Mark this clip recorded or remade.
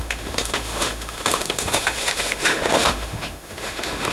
remade